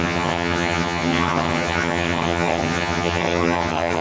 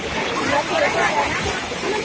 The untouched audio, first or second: second